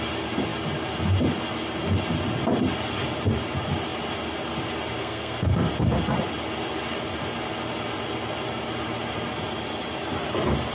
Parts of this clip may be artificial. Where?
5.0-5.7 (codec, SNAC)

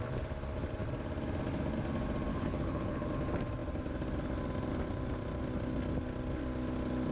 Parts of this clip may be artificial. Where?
2.3-3.1 (codec, HILCodec)

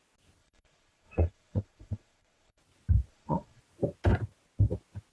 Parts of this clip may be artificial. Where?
0.4-2.6 (vocoder, Vocos); 3.1-3.6

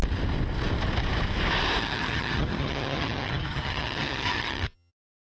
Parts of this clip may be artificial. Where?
1.8-4.9 (vocoder, HiFi-GAN)

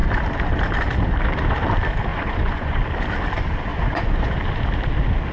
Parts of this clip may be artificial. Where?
2.1-2.8 (vocoder, Vocos); 3.7-4.4